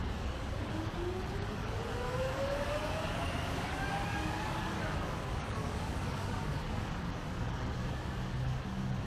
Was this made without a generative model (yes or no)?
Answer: no